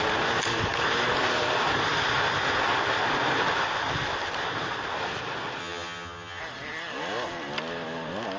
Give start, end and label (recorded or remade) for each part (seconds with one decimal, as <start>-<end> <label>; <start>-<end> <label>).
0.0-5.6 recorded; 5.6-6.4 remade; 6.4-8.4 recorded